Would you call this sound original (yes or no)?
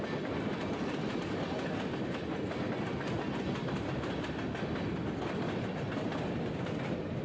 yes